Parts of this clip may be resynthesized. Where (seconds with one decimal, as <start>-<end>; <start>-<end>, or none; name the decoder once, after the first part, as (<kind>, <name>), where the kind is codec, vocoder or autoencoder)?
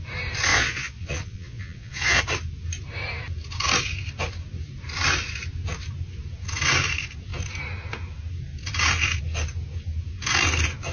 0.5-2.2 (vocoder, Vocos)